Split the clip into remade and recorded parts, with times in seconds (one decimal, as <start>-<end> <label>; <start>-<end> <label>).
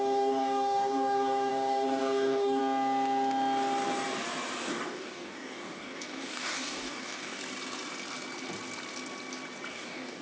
0.0-2.6 remade; 2.6-4.7 recorded; 4.7-7.4 remade; 7.4-9.7 recorded; 9.7-10.2 remade